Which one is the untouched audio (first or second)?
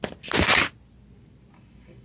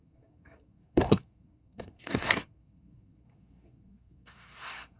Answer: first